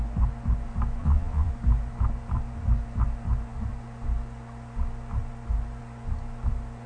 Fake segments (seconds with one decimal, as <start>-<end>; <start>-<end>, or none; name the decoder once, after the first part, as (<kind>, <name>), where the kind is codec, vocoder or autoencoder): 1.0-1.5 (vocoder, Vocos)